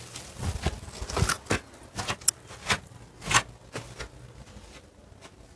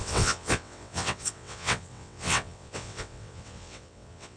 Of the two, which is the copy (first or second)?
second